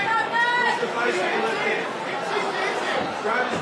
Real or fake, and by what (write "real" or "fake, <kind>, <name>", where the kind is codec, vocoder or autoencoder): real